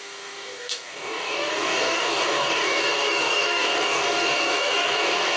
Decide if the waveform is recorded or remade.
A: remade